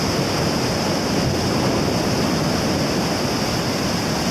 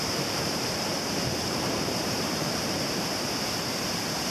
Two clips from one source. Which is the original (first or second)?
first